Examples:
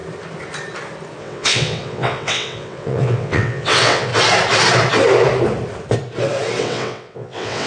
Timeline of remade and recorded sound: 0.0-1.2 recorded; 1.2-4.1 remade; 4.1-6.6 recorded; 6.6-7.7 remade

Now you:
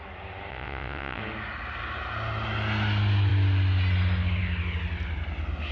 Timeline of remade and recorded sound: 0.0-0.5 recorded; 0.5-1.2 remade; 1.2-5.7 recorded

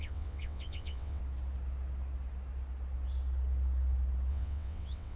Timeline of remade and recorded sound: 0.0-1.2 remade; 1.2-4.3 recorded; 4.3-5.2 remade

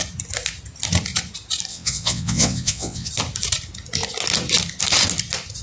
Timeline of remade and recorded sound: 0.0-1.7 recorded; 1.7-3.1 remade; 3.1-5.6 recorded

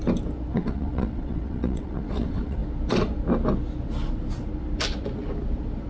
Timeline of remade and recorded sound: 0.0-0.5 recorded; 0.5-2.6 remade; 2.6-5.9 recorded

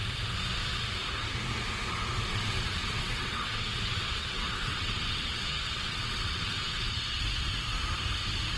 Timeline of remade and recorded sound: 0.0-2.3 recorded; 2.3-7.2 remade; 7.2-8.6 recorded

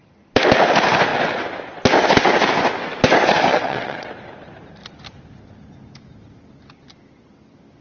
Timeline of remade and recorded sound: 0.0-3.5 recorded; 3.5-4.1 remade; 4.1-7.8 recorded

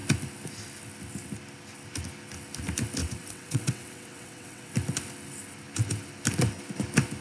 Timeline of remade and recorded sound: 0.0-3.0 recorded; 3.0-4.7 remade; 4.7-7.2 recorded